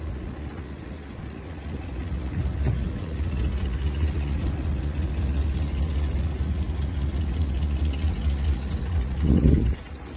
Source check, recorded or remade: remade